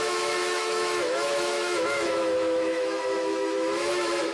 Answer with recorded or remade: remade